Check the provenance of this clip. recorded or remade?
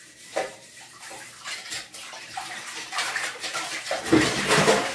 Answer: remade